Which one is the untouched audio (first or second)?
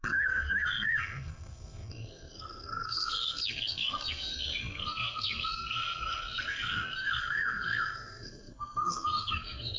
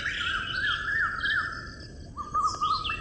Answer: second